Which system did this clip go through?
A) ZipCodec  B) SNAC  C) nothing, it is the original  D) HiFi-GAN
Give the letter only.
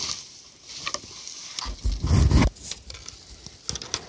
C